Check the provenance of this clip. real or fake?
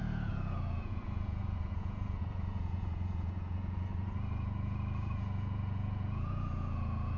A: fake